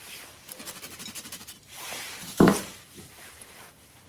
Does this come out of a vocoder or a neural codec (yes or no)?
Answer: no